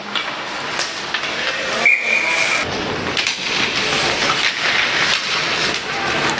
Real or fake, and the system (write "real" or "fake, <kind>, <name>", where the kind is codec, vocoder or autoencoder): real